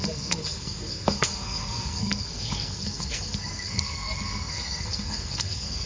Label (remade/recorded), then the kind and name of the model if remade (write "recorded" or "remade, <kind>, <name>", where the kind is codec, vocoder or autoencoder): remade, codec, SNAC